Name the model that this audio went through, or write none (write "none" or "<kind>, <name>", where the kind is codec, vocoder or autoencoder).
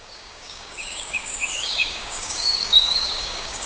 codec, DAC